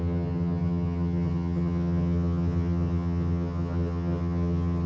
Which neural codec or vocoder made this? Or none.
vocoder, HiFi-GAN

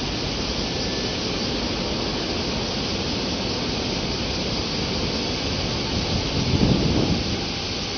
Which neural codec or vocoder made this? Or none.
none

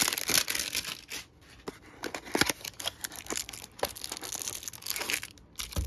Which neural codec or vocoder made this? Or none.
none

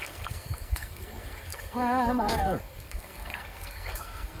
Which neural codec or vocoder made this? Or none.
codec, SNAC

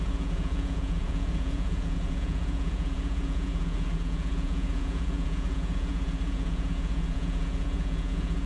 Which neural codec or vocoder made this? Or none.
vocoder, Vocos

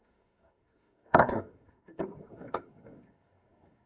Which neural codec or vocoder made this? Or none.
codec, SNAC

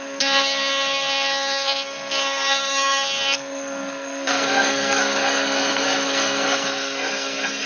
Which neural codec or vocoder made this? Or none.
codec, SNAC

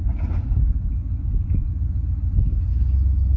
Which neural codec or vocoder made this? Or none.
none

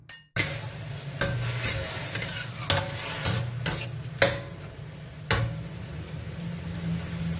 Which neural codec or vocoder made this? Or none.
none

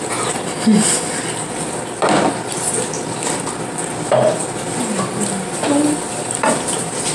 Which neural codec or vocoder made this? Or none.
none